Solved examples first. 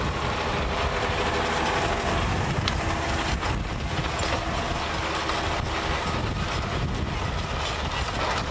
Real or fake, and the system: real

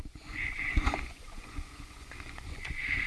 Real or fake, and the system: fake, vocoder, Vocos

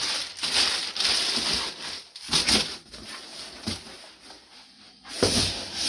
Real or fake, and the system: real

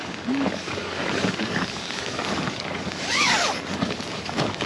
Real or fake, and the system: fake, codec, DAC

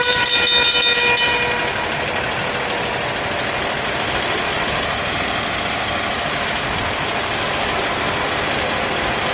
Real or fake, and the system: real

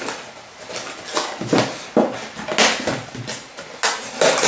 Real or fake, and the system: real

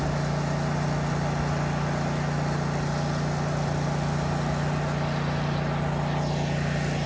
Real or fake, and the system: real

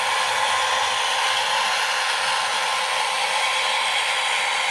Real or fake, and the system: real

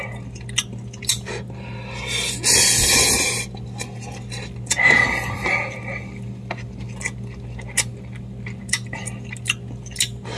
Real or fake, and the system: real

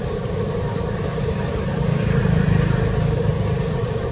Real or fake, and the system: fake, vocoder, BigVGAN v2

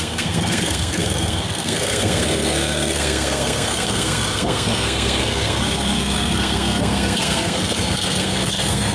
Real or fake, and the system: fake, codec, SNAC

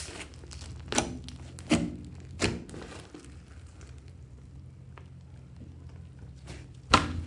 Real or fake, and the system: real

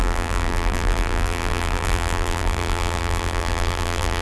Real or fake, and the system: fake, vocoder, BigVGAN v2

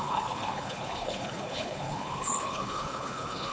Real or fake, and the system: fake, codec, HILCodec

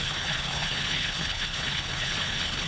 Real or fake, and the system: fake, codec, HILCodec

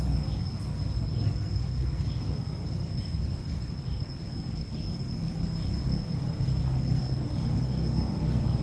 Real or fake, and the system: fake, codec, SNAC